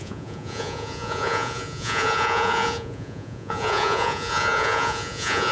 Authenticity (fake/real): fake